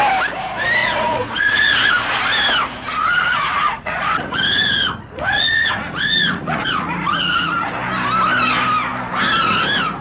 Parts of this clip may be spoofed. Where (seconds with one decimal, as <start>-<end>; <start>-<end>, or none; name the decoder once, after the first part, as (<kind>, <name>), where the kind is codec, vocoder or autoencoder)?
0.8-2.2 (vocoder, Vocos); 3.0-7.7